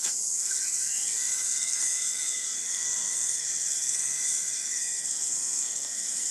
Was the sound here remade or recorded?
remade